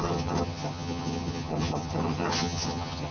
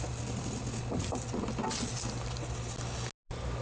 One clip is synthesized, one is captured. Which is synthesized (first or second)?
first